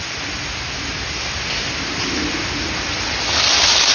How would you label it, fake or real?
real